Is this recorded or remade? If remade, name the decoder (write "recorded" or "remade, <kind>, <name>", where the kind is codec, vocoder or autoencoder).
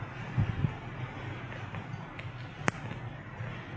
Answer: recorded